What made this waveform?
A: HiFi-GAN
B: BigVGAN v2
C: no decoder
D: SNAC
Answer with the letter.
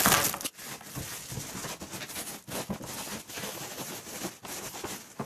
C